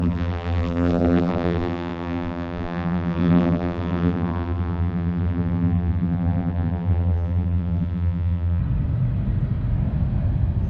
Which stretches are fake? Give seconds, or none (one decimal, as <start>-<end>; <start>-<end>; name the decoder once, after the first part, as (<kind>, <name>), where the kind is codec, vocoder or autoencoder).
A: 0.0-8.6 (vocoder, BigVGAN v2)

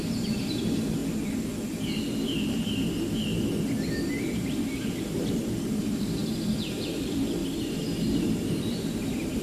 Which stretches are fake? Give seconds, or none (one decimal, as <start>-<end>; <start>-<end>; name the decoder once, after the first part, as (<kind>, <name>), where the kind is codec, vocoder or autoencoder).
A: 0.0-1.0 (vocoder, BigVGAN v2); 4.2-7.4; 8.0-9.4

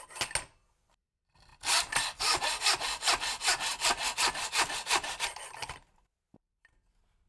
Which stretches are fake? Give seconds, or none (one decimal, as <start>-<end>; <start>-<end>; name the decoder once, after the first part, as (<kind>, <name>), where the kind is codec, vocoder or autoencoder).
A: none

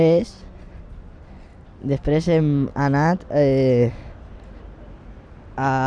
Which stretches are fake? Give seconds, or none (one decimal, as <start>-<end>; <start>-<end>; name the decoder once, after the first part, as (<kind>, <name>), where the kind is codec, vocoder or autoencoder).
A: 0.0-2.7 (vocoder, BigVGAN v2); 5.0-5.9